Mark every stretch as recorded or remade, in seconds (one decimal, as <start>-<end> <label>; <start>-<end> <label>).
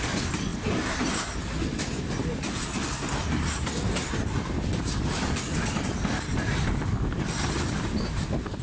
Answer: 0.0-8.6 recorded